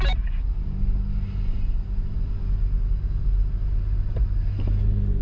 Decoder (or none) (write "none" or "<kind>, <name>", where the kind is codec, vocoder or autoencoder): none